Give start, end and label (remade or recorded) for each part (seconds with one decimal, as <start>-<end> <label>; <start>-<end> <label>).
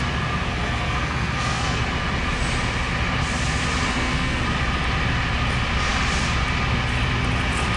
0.0-0.5 recorded; 0.5-1.8 remade; 1.8-3.9 recorded; 3.9-4.4 remade; 4.4-7.8 recorded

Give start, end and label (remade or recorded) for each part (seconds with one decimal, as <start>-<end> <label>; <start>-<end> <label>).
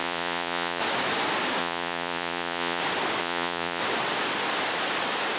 0.0-0.8 remade; 0.8-1.6 recorded; 1.6-2.8 remade; 2.8-3.2 recorded; 3.2-3.8 remade; 3.8-5.4 recorded